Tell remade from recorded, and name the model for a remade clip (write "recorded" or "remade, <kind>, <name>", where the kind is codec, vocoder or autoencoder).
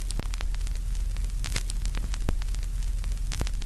recorded